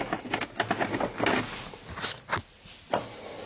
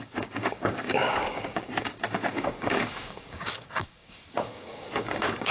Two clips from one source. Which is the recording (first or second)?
first